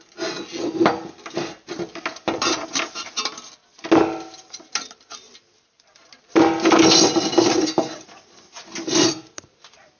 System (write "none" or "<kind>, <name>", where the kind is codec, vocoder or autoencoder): none